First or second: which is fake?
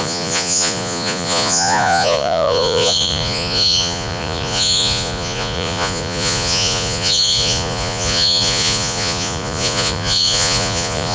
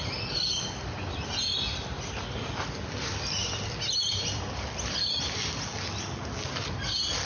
first